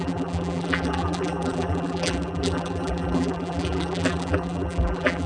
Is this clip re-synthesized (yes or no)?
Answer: yes